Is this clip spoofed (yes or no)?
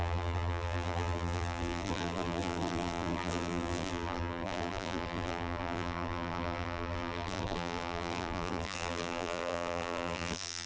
yes